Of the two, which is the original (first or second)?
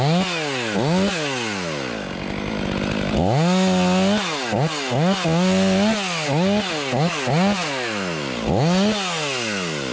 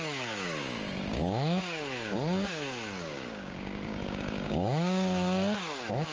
first